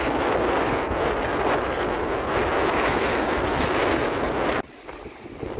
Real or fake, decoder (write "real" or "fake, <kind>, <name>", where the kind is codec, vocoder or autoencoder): real